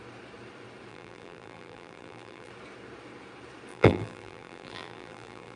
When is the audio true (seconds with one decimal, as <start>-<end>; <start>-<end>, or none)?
0.0-0.9; 2.5-3.7